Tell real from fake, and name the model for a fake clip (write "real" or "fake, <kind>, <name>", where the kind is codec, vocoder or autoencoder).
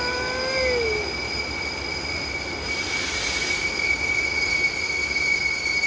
real